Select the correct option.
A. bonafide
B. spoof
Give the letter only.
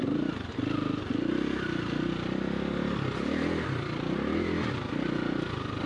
A